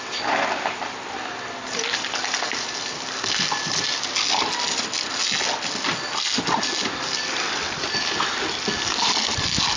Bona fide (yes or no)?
yes